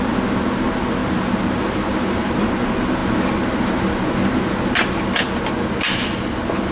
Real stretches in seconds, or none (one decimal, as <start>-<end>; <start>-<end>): 0.0-1.0; 2.3-6.7